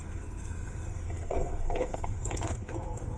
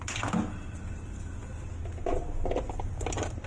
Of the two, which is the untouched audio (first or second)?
second